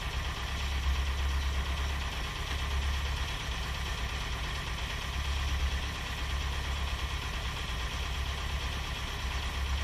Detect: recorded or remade recorded